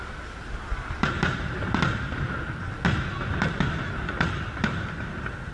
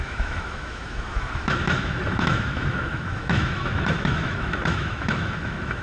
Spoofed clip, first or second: second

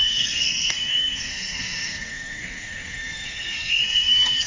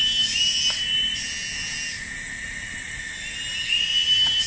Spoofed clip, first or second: first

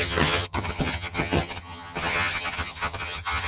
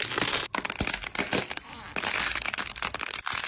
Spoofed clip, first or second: first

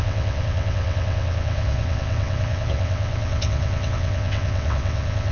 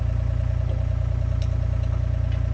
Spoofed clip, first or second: first